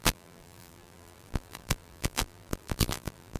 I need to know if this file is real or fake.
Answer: fake